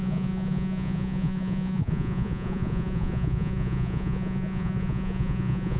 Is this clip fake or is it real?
fake